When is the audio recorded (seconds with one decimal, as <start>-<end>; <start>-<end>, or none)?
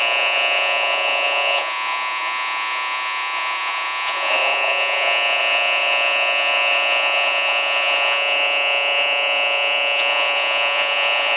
none